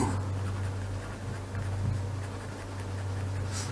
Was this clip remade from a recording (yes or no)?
no